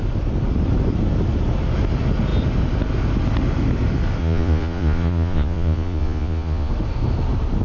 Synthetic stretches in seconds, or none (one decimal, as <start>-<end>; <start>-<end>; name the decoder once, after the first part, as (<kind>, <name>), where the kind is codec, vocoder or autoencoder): 4.2-6.7 (vocoder, Vocos)